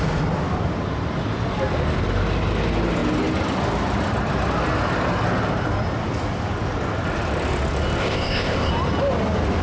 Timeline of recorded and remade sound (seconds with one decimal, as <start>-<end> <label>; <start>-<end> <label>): 0.0-8.0 recorded; 8.0-8.7 remade; 8.7-9.6 recorded